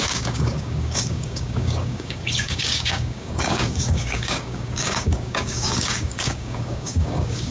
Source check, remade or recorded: remade